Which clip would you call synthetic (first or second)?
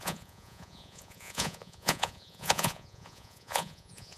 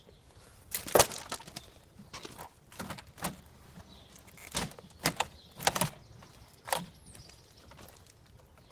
first